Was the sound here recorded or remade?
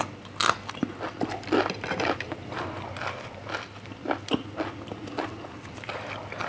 recorded